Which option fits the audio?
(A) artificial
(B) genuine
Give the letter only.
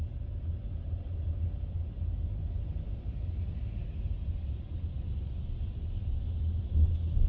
B